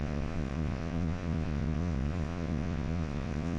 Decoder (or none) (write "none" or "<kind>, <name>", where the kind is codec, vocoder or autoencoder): vocoder, Vocos